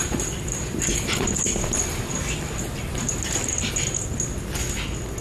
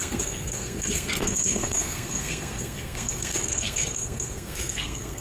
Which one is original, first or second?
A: first